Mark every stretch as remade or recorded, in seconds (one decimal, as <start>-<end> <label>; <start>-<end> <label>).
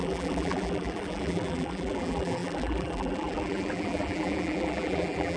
0.0-5.4 remade